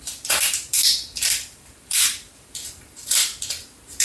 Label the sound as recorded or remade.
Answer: remade